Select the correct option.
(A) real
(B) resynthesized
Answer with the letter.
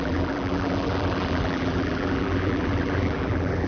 B